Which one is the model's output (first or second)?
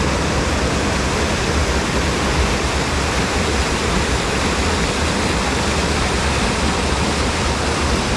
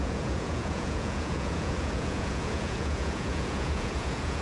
second